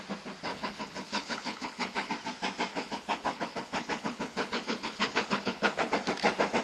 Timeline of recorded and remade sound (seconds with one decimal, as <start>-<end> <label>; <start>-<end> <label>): 0.0-0.5 recorded; 0.5-2.1 remade; 2.1-2.7 recorded; 2.7-5.9 remade; 5.9-6.6 recorded